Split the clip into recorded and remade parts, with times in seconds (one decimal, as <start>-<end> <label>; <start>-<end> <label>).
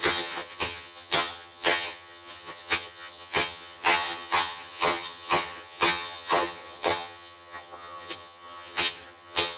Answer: 0.0-9.6 remade